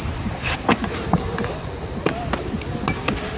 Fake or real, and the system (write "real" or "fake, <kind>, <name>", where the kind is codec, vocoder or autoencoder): real